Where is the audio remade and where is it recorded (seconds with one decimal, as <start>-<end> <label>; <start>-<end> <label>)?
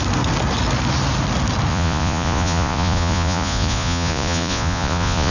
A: 0.0-1.7 recorded; 1.7-5.3 remade